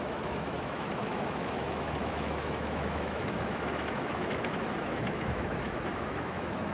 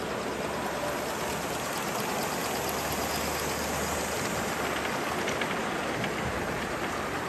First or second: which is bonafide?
second